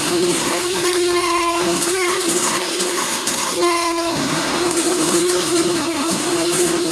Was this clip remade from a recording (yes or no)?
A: yes